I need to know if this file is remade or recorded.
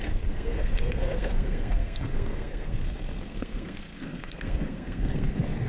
remade